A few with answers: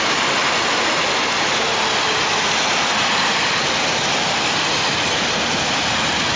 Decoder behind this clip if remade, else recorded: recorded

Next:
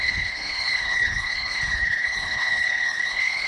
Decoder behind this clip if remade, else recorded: remade, codec, HILCodec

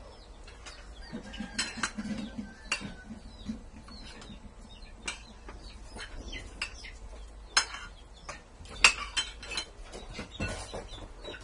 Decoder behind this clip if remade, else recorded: recorded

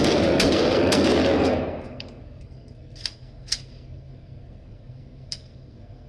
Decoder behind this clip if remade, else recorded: remade, codec, SNAC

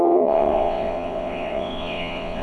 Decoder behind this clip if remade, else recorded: remade, vocoder, WaveNeXt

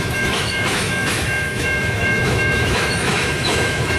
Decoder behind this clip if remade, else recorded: remade, autoencoder, DAC-VAE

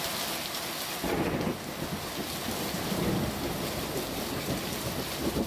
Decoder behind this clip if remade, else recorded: recorded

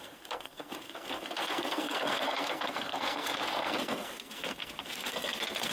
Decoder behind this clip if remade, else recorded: remade, codec, SNAC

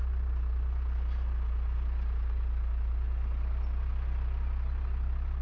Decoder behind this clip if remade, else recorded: recorded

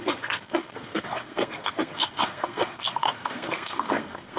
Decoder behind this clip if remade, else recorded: remade, codec, SNAC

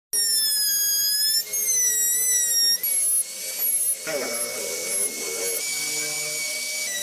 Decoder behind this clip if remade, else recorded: recorded